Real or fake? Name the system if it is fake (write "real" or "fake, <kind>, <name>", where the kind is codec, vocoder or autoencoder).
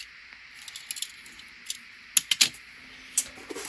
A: real